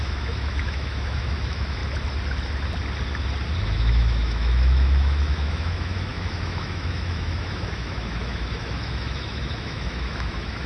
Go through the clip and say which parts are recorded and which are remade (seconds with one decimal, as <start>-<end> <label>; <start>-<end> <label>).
0.0-1.8 remade; 1.8-3.6 recorded; 3.6-10.7 remade